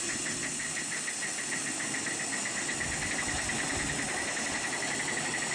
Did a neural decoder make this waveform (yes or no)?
no